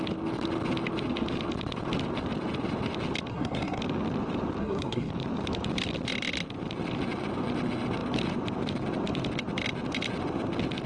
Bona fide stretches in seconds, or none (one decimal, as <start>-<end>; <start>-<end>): 0.0-3.3; 3.8-4.6; 5.1-10.9